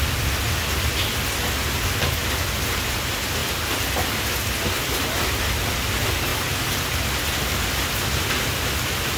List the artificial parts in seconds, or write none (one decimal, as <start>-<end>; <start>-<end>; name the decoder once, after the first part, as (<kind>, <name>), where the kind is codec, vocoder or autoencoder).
none